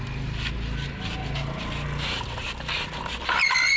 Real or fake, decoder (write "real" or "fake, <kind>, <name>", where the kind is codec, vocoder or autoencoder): real